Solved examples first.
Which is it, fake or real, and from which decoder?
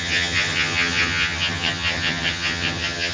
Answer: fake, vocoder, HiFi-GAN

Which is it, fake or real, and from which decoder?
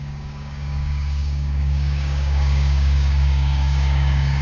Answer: fake, codec, DAC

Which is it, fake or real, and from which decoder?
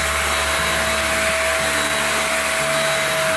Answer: real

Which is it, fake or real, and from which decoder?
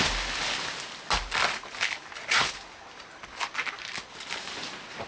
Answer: real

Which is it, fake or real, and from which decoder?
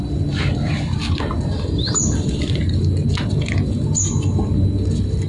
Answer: real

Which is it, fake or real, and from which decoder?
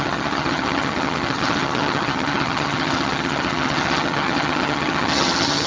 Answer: fake, vocoder, HiFi-GAN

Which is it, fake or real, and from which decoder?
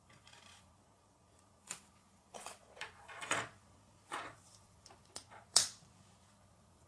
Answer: fake, vocoder, Vocos